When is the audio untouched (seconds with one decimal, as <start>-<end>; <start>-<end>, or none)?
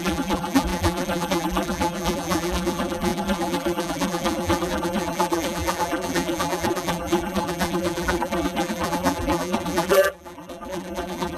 none